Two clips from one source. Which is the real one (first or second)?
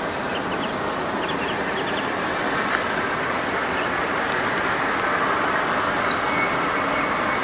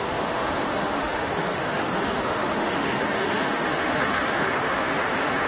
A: first